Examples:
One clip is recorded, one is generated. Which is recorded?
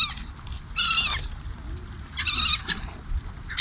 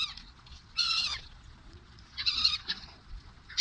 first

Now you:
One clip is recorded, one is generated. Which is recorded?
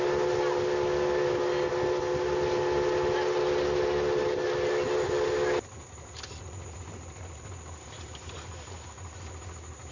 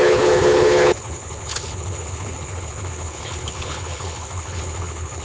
first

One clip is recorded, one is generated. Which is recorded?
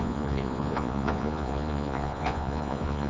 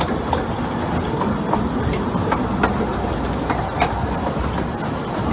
second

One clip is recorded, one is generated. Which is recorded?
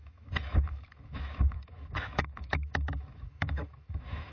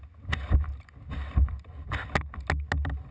second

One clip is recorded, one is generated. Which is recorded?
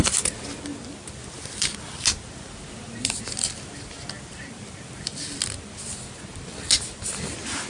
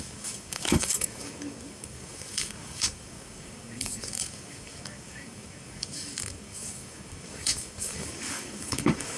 first